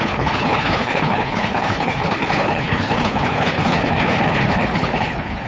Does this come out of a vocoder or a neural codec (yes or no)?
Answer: yes